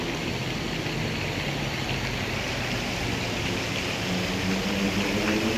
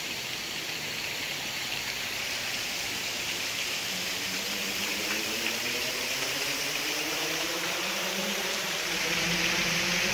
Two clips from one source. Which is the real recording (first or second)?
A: first